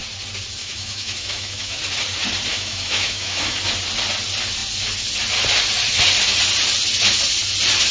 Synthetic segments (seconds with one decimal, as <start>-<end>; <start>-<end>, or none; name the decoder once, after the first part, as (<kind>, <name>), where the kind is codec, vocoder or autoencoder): 0.6-1.8 (autoencoder, DAC-VAE); 2.5-3.6